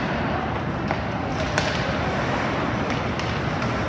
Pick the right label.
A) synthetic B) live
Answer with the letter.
B